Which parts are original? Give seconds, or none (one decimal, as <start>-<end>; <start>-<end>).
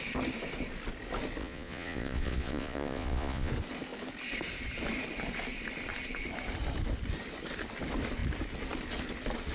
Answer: 0.0-1.4; 3.5-9.5